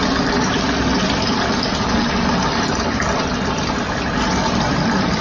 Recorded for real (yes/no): yes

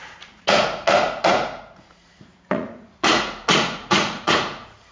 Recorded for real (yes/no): no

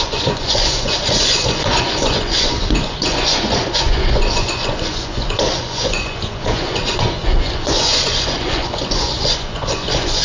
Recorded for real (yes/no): no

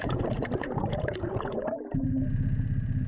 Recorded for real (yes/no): no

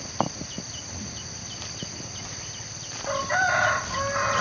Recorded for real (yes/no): yes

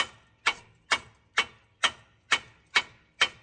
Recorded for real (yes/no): yes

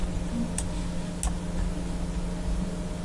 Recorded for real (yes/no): yes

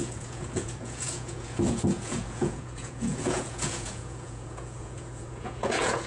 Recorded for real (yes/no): no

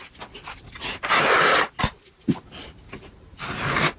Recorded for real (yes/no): yes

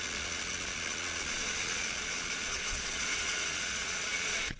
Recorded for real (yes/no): no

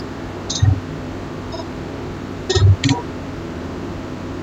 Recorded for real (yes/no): yes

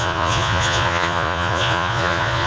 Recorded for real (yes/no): no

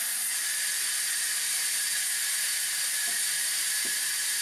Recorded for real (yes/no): yes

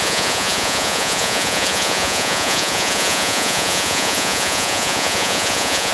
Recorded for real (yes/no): no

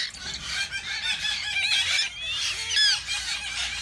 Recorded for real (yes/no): yes